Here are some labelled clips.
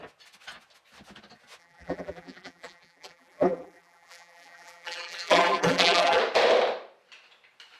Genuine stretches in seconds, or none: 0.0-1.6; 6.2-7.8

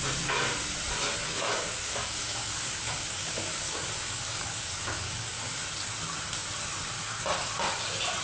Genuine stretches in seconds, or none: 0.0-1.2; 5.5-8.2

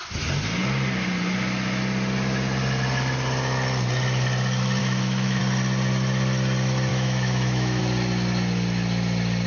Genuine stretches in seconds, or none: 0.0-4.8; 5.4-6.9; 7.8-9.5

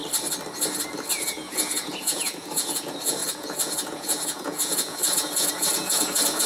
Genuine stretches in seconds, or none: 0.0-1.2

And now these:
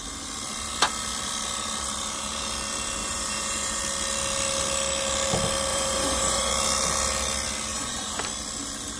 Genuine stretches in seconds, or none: 0.0-3.0; 3.8-5.7; 6.5-7.7; 8.2-9.0

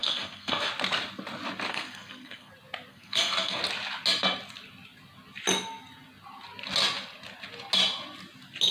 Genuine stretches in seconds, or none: 0.7-1.7; 2.5-2.9; 3.6-8.7

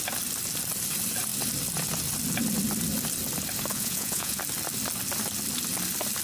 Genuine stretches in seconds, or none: 0.0-3.7; 4.4-6.2